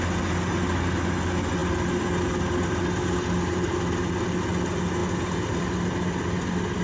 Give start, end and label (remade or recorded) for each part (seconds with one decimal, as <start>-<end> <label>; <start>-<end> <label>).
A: 0.0-6.8 recorded

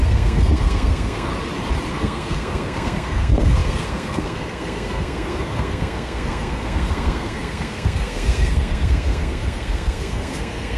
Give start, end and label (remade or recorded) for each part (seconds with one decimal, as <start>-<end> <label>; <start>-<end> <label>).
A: 0.0-1.3 remade; 1.3-1.9 recorded; 1.9-10.8 remade

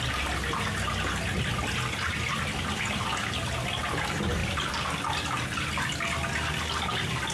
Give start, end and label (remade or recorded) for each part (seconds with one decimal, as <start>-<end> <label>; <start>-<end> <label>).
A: 0.0-7.3 recorded

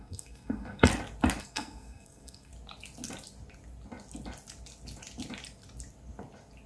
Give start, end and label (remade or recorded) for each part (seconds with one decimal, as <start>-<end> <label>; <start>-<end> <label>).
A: 0.0-0.9 remade; 0.9-1.4 recorded; 1.4-2.5 remade; 2.5-6.7 recorded

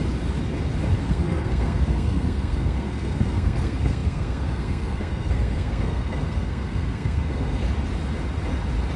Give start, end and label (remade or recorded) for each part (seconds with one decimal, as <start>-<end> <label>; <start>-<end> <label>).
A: 0.0-1.0 recorded; 1.0-7.6 remade; 7.6-9.0 recorded

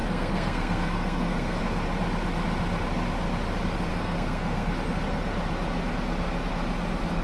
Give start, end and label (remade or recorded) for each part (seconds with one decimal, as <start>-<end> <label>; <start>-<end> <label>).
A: 0.0-1.6 remade; 1.6-3.9 recorded; 3.9-4.7 remade; 4.7-7.2 recorded

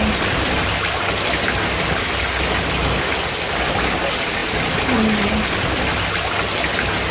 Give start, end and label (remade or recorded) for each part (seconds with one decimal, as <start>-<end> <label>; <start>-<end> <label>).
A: 0.0-7.1 recorded